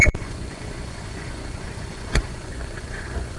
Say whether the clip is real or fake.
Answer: fake